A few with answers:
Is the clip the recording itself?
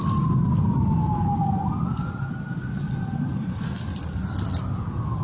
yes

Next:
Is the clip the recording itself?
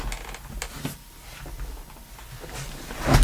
yes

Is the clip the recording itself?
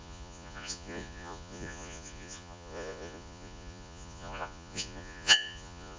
no